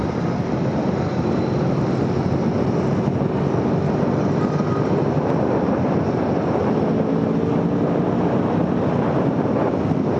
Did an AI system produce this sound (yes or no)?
no